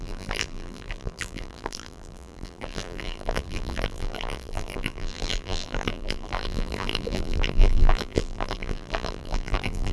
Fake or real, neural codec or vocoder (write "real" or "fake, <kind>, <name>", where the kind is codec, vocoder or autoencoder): fake, vocoder, BigVGAN v2